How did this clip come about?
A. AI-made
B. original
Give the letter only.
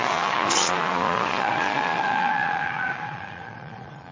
A